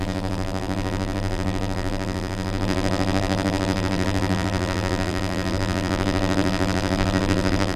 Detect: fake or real fake